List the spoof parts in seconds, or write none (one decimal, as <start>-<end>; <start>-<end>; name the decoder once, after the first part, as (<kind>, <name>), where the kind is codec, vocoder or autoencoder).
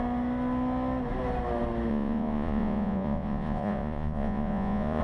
1.9-5.0 (vocoder, Vocos)